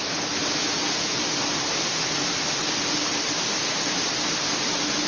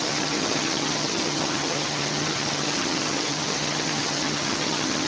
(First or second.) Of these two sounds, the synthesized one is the second